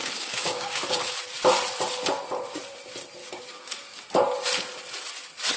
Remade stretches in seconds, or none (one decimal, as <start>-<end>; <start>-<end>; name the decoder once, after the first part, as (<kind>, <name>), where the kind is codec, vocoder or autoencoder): 0.0-0.8 (codec, DAC); 3.2-4.0